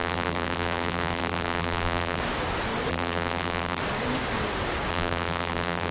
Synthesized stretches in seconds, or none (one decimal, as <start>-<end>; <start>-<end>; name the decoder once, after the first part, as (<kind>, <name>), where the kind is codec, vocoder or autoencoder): 0.0-2.2 (vocoder, BigVGAN v2); 2.9-3.8; 4.9-5.9